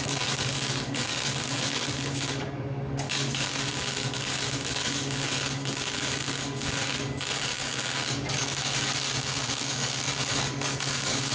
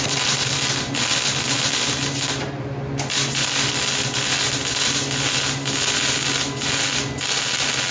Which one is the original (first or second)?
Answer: second